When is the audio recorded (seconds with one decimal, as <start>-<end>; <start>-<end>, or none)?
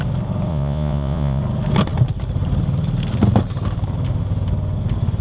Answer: 0.0-0.5; 1.4-5.2